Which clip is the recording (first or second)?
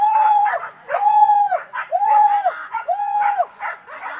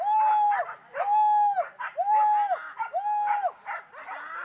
second